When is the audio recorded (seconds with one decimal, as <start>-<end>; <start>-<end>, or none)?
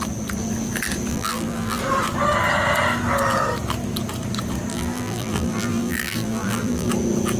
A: 0.0-1.1; 1.8-4.7; 6.9-7.4